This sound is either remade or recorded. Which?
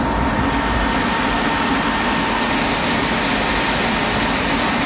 recorded